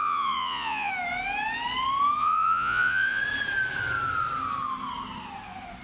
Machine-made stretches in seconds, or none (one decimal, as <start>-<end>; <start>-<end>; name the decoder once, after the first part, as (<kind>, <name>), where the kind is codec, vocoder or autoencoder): 0.0-0.9 (vocoder, Vocos); 2.2-3.2